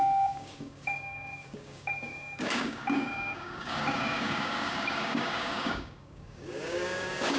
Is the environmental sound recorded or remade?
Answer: remade